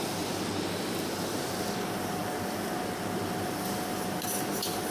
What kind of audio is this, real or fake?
real